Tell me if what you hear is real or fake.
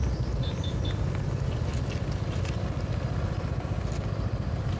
real